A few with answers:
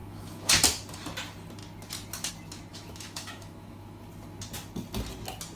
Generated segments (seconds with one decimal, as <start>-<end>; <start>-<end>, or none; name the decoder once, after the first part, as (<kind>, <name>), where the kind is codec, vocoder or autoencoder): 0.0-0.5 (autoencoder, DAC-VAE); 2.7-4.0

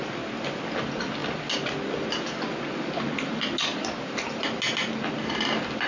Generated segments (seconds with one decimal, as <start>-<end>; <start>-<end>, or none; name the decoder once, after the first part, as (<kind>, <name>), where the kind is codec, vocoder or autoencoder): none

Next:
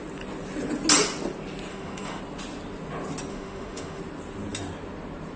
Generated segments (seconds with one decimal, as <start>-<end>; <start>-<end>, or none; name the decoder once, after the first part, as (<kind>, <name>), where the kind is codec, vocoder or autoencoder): 1.7-2.2 (autoencoder, DAC-VAE); 3.3-4.0